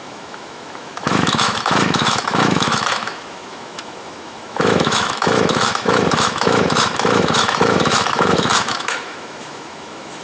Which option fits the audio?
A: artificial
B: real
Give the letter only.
A